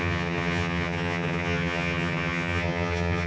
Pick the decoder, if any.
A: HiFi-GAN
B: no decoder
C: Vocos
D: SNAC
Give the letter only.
A